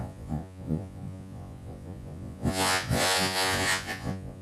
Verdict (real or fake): fake